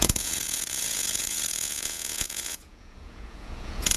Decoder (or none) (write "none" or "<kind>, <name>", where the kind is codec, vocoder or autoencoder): vocoder, Vocos